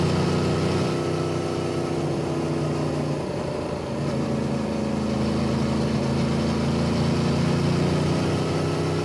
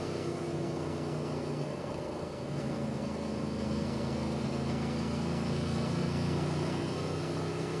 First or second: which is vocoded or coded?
second